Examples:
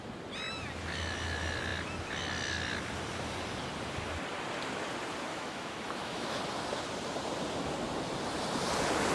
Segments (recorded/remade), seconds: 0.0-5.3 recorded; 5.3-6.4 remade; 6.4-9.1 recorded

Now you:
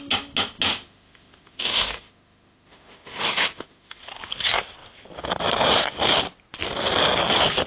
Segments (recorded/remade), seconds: 0.0-0.7 recorded; 0.7-4.0 remade; 4.0-7.7 recorded

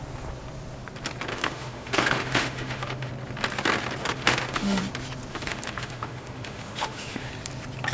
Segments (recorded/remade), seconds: 0.0-1.3 recorded; 1.3-3.1 remade; 3.1-4.0 recorded; 4.0-4.8 remade; 4.8-5.3 recorded; 5.3-7.3 remade; 7.3-7.9 recorded